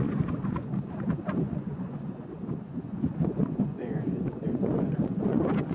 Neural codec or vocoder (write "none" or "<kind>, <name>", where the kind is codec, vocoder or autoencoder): vocoder, Vocos